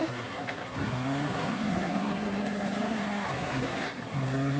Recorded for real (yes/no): no